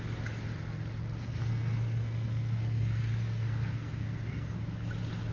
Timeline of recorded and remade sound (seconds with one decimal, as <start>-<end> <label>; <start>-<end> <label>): 0.0-1.4 recorded; 1.4-4.6 remade; 4.6-5.3 recorded